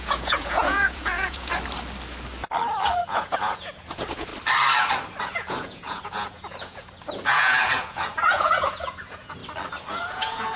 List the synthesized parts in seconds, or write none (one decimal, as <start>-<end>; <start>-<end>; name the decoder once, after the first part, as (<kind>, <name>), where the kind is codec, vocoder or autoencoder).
0.0-1.5 (vocoder, Vocos); 3.0-4.3; 5.2-9.4; 9.9-10.6